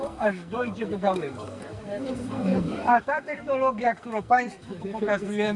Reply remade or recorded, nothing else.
remade